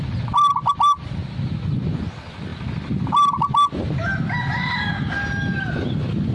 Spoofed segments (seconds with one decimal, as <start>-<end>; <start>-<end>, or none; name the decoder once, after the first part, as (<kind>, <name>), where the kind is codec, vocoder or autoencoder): none